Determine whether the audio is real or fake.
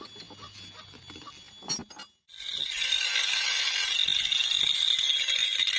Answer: real